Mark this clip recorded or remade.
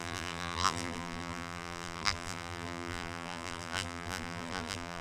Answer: remade